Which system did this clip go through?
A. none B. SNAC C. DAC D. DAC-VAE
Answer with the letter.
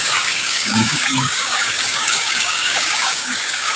C